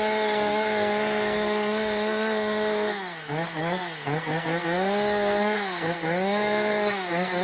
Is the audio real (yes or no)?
no